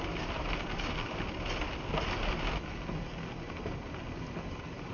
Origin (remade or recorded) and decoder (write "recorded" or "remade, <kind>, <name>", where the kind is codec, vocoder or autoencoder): recorded